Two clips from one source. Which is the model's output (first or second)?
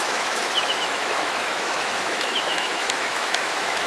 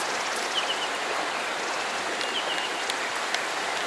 first